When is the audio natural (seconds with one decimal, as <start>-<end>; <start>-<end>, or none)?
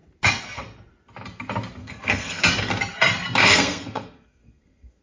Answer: 0.0-1.8; 2.4-3.4